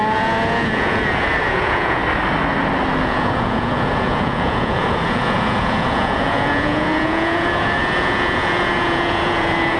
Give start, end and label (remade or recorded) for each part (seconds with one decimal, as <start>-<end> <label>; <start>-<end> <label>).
0.0-2.0 remade; 2.0-3.0 recorded; 3.0-9.8 remade